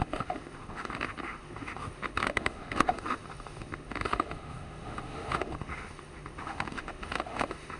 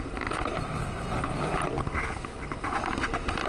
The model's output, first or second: first